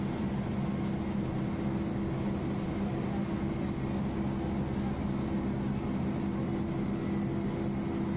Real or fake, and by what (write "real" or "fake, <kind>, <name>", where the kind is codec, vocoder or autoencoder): real